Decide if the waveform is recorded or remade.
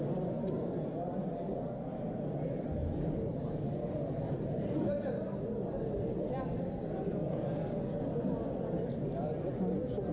recorded